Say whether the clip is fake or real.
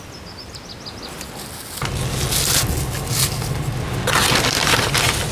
real